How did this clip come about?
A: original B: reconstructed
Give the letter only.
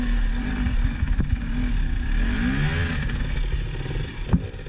A